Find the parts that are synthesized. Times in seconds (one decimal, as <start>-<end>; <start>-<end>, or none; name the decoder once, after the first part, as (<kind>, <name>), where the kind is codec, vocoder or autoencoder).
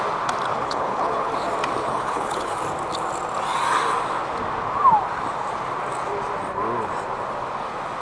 0.5-1.3 (codec, HILCodec); 1.8-2.6